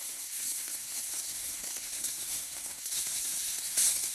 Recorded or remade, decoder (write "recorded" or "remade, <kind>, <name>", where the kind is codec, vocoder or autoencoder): remade, codec, SNAC